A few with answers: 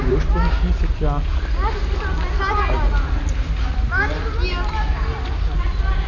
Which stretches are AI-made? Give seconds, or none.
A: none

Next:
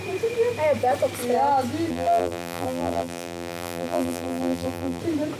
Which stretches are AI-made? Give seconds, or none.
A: 1.9-5.0 (vocoder, BigVGAN v2)

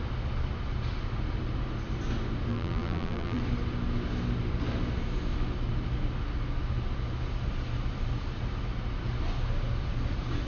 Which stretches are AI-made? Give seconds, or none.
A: 2.5-3.4 (vocoder, BigVGAN v2)

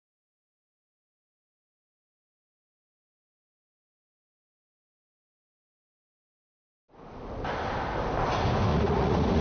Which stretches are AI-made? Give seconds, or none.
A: 8.7-9.4 (vocoder, Vocos)

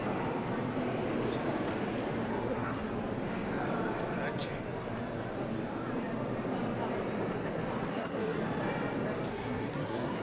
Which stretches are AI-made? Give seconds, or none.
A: 2.3-2.9 (codec, SNAC); 7.9-8.4; 9.3-10.2

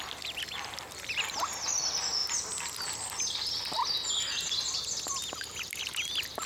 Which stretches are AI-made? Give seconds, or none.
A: none